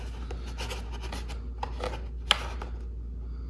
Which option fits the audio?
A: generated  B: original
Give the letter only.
B